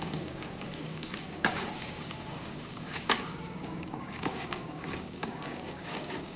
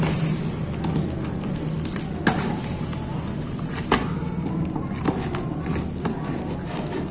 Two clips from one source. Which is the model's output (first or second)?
first